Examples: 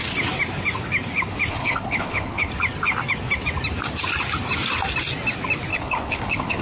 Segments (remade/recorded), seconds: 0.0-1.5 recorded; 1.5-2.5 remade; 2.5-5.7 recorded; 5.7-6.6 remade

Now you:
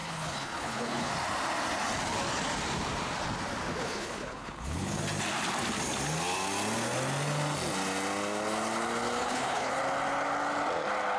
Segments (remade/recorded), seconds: 0.0-1.1 remade; 1.1-3.8 recorded; 3.8-5.0 remade; 5.0-9.2 recorded; 9.2-9.7 remade; 9.7-11.2 recorded

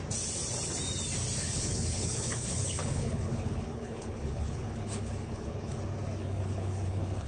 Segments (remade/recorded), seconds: 0.0-1.4 recorded; 1.4-5.8 remade; 5.8-6.2 recorded; 6.2-7.3 remade

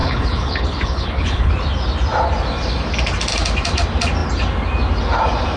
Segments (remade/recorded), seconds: 0.0-1.5 remade; 1.5-5.6 recorded

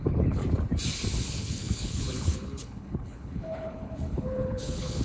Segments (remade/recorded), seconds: 0.0-0.4 remade; 0.4-1.1 recorded; 1.1-5.0 remade

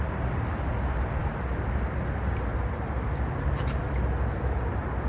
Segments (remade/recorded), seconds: 0.0-5.1 recorded